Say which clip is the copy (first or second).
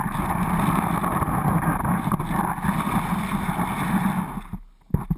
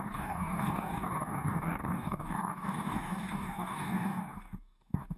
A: second